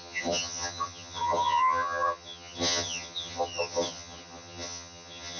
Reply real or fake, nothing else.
fake